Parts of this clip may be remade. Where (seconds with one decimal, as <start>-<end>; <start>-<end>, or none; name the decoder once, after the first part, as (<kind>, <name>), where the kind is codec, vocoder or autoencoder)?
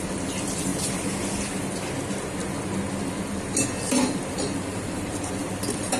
0.0-0.7 (vocoder, BigVGAN v2); 4.3-6.0